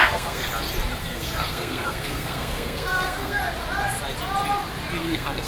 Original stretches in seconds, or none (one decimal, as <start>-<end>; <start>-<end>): 0.5-1.0; 3.4-5.0